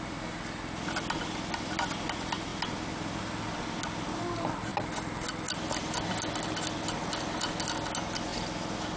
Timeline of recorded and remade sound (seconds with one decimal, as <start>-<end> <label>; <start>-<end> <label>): 0.0-9.0 recorded